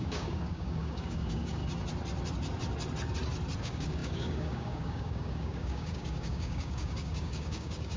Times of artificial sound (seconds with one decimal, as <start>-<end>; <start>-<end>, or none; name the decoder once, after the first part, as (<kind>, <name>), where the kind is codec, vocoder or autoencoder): 0.0-1.6 (codec, DAC); 3.6-8.0